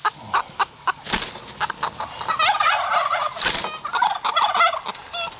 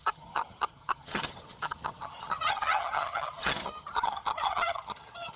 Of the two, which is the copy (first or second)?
second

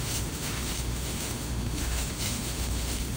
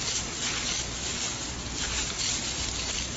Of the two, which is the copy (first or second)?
first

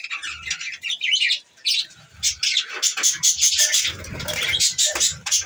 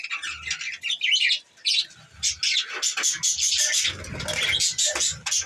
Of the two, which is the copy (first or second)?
first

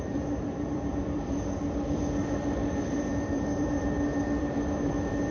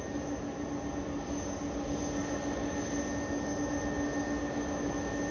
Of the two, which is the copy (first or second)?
first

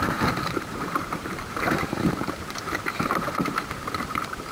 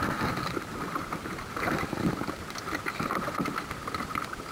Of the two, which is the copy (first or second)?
first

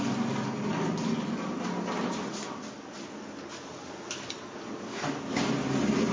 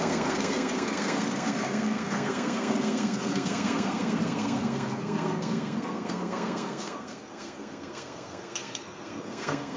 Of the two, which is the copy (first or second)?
second